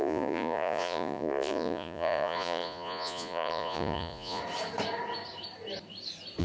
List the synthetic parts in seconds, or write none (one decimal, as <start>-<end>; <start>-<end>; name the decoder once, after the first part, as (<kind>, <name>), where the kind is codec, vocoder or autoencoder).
0.0-4.4 (vocoder, Vocos)